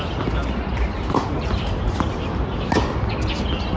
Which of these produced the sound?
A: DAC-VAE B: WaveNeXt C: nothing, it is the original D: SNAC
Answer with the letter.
C